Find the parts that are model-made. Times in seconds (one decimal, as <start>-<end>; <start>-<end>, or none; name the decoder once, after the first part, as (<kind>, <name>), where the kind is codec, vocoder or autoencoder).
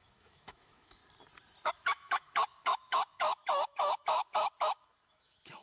0.0-1.0 (autoencoder, DAC-VAE); 1.7-5.6